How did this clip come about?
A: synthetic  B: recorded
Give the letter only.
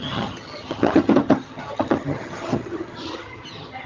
A